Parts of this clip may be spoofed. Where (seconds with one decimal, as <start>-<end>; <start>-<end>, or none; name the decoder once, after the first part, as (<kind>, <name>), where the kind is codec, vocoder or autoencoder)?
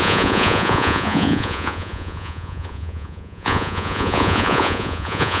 0.0-5.4 (vocoder, Vocos)